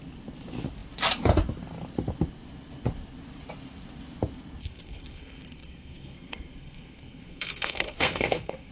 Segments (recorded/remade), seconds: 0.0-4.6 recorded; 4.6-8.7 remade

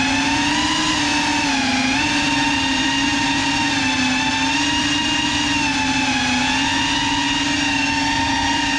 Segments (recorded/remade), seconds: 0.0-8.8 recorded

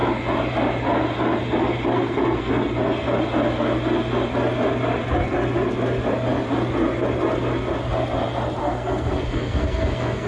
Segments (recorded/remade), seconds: 0.0-1.9 recorded; 1.9-2.5 remade; 2.5-8.6 recorded; 8.6-10.3 remade